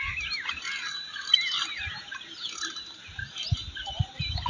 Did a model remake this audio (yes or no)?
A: no